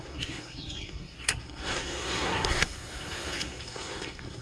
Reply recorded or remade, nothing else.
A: remade